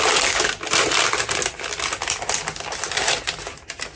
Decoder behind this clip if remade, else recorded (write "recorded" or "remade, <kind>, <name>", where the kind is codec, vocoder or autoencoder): recorded